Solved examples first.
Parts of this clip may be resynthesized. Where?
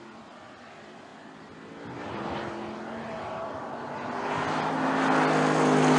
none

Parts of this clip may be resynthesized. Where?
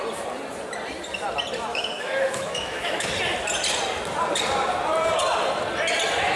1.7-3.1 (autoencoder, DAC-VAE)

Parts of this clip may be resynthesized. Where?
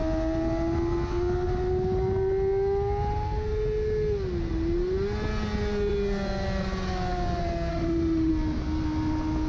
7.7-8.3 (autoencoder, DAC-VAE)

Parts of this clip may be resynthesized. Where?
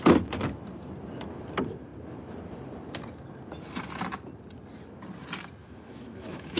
5.6-6.6 (autoencoder, DAC-VAE)